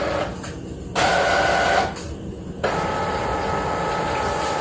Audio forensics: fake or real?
real